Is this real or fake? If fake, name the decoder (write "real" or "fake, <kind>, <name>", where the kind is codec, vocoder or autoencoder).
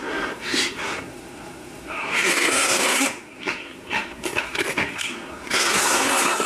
fake, codec, SNAC